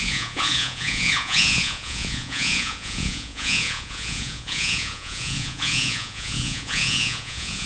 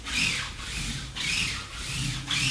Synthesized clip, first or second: first